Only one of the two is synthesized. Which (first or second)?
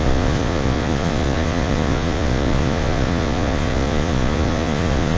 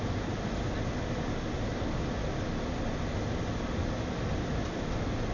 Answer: first